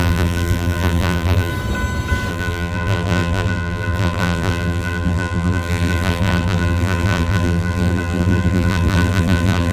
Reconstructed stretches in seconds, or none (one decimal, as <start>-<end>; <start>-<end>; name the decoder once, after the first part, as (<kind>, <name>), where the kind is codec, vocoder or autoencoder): 0.0-1.5 (vocoder, BigVGAN v2); 2.3-9.7